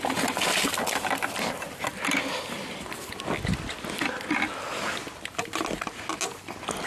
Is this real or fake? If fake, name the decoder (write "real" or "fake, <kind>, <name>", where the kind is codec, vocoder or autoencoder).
real